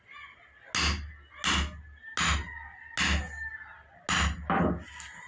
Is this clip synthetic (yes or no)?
no